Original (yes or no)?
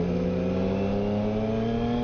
yes